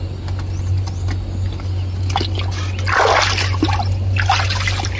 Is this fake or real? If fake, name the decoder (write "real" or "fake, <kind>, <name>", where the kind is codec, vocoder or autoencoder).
real